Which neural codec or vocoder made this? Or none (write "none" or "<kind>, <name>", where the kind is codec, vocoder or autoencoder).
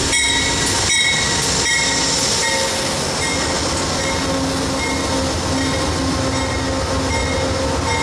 none